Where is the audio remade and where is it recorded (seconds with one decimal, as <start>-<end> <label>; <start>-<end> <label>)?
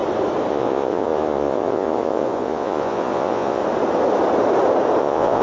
0.0-0.5 recorded; 0.5-3.6 remade; 3.6-5.0 recorded; 5.0-5.4 remade